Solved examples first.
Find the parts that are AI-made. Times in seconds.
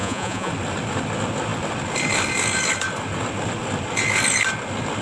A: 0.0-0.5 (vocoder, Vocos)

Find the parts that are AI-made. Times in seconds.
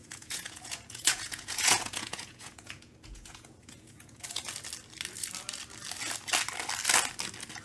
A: 0.0-4.4 (vocoder, Vocos)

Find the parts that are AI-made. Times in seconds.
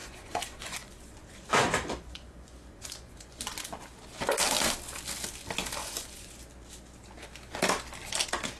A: 0.0-3.4 (vocoder, Vocos); 5.8-6.3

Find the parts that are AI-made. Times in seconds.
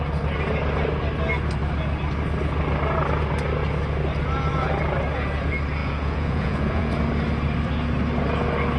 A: 5.8-6.9 (vocoder, Vocos)